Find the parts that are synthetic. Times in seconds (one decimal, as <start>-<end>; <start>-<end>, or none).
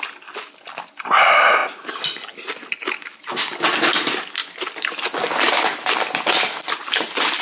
4.4-6.3